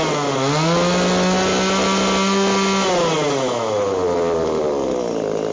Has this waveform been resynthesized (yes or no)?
no